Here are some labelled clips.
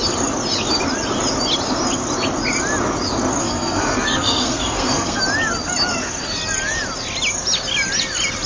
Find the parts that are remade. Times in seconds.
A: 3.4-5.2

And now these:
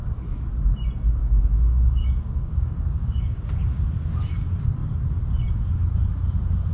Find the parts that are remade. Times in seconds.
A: 1.2-3.4

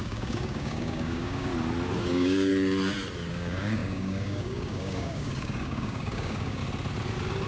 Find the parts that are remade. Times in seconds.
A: 0.0-1.5; 2.0-2.5; 3.3-6.6